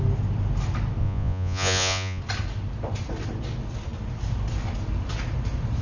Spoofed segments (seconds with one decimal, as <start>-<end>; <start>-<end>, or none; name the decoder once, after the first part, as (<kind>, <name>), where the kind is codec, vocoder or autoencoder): 1.0-2.2 (vocoder, Vocos)